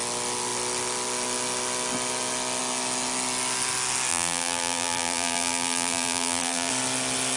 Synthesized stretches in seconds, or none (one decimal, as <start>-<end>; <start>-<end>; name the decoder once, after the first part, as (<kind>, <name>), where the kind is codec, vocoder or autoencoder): 4.1-6.7 (vocoder, BigVGAN v2)